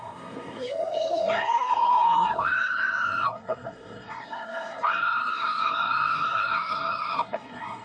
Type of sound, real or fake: fake